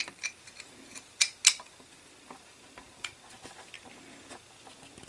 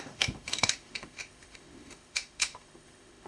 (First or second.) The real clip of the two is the first